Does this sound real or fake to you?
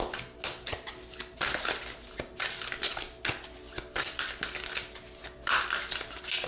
real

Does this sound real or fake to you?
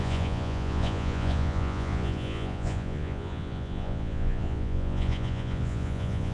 fake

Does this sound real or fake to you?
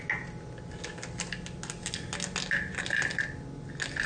real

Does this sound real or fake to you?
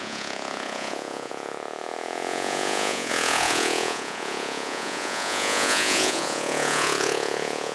fake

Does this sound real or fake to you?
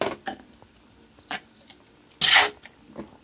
real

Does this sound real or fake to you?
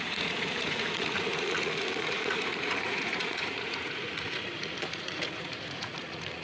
fake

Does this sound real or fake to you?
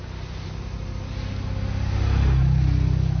real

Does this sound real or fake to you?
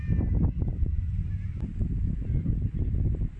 real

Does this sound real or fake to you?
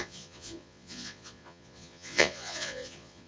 fake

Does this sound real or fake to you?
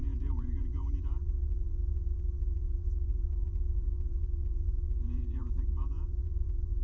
fake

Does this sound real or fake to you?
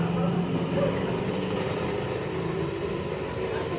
real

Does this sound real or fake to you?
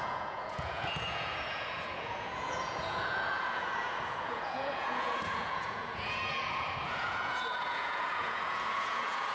fake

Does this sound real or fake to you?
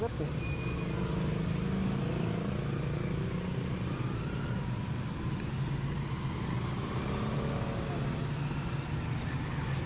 real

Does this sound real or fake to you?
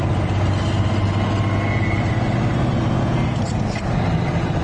real